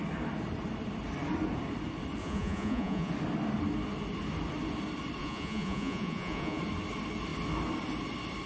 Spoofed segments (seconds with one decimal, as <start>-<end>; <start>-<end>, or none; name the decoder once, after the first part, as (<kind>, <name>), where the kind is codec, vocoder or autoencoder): 2.2-3.1 (vocoder, Vocos); 5.2-6.6